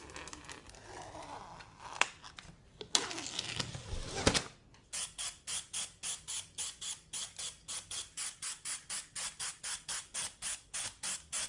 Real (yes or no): yes